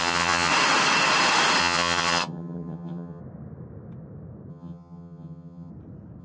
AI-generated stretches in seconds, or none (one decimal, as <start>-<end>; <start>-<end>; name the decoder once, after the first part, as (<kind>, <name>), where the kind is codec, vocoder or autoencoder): 0.0-0.5 (vocoder, HiFi-GAN); 1.6-3.2; 4.5-5.7